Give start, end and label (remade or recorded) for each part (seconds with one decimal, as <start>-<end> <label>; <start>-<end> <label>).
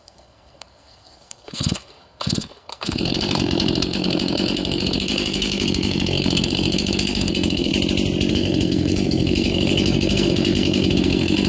0.0-7.7 remade; 7.7-8.3 recorded; 8.3-11.5 remade